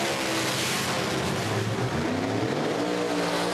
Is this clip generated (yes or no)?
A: no